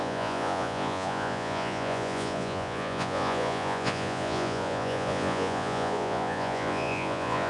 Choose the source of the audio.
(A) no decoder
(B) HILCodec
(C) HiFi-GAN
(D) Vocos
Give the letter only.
D